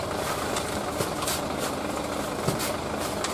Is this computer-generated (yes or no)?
no